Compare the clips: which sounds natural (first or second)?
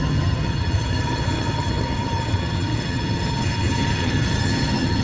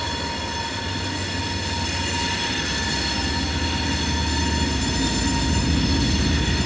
second